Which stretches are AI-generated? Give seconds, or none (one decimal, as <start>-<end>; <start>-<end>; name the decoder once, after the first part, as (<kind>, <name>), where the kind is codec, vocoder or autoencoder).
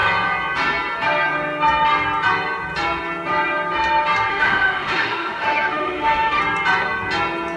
4.3-6.4 (autoencoder, DAC-VAE)